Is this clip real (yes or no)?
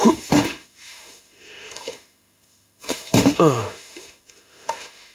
no